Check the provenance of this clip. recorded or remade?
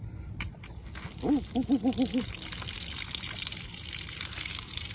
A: recorded